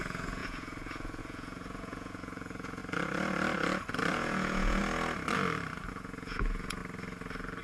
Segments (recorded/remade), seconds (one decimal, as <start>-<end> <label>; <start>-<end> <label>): 0.0-2.8 remade; 2.8-4.1 recorded; 4.1-4.8 remade; 4.8-5.9 recorded; 5.9-6.8 remade; 6.8-7.6 recorded